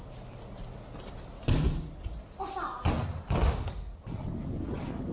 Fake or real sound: real